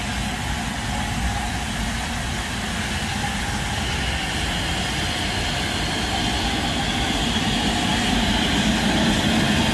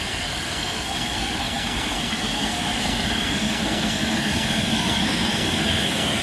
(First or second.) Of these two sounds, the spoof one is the second